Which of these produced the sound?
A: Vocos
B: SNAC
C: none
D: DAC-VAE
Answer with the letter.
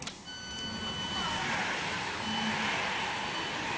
C